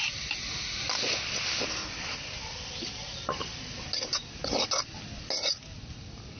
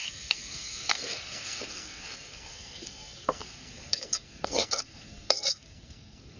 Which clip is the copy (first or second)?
second